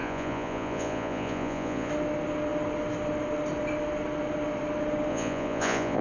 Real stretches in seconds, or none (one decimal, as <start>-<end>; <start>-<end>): 1.9-5.1